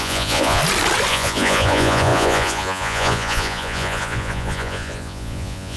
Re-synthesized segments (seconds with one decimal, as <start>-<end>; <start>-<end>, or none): 0.0-0.6; 1.1-5.8